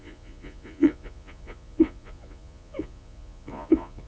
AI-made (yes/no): yes